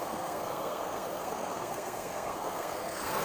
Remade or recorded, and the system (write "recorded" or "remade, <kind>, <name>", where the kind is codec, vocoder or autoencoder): remade, codec, SNAC